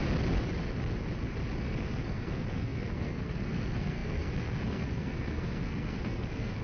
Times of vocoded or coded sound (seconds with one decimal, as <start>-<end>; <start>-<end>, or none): 1.6-6.6